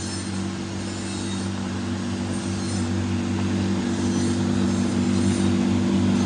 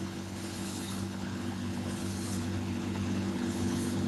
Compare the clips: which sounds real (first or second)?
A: first